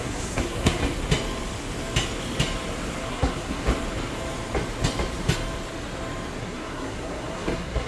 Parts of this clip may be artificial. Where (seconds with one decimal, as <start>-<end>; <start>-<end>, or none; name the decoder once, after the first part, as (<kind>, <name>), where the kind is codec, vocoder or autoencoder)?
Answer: 0.0-0.8 (codec, SNAC); 3.1-3.7; 6.4-7.9